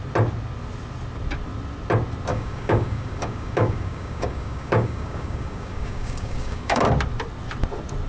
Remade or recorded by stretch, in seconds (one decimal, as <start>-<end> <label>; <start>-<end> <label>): 0.0-2.3 recorded; 2.3-6.8 remade; 6.8-8.1 recorded